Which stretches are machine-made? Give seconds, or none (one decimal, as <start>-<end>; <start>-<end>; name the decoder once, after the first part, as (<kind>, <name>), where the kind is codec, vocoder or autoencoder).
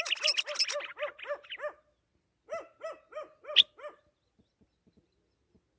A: none